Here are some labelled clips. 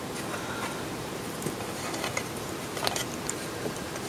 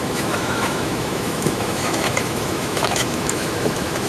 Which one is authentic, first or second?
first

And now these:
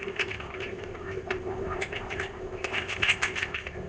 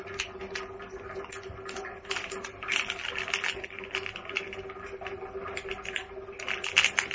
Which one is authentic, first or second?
second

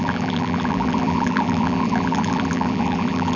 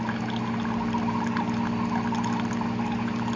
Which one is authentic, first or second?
second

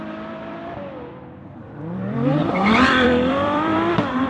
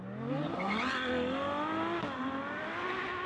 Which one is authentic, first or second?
second